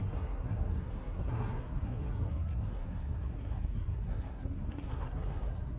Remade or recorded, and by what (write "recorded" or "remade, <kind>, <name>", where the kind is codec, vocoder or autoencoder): remade, codec, SNAC